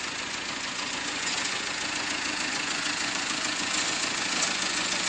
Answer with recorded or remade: remade